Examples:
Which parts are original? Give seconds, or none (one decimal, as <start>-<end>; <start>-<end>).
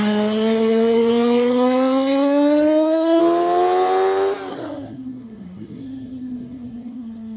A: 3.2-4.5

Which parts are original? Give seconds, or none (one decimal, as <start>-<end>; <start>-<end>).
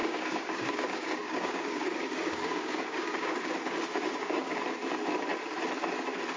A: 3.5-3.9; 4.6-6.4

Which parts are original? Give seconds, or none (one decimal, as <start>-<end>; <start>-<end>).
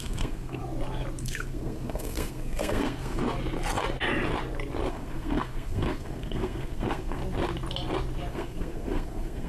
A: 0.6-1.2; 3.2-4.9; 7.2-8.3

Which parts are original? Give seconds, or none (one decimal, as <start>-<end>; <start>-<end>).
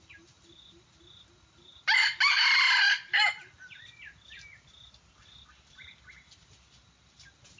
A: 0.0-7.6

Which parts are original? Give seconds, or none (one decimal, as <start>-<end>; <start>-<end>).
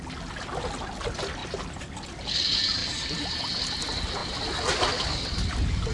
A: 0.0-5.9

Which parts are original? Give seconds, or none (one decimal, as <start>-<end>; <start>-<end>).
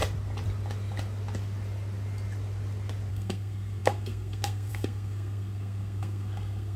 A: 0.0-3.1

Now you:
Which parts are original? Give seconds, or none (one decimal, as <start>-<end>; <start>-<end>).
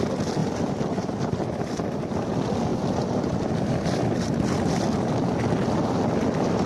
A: 0.0-6.7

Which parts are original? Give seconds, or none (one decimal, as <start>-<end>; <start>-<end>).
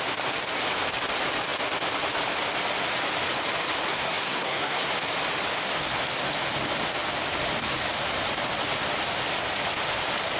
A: 0.0-3.9; 4.9-10.4